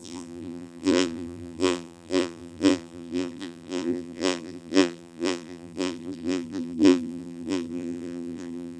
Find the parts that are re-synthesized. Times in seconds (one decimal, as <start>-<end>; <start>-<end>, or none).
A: 0.0-8.8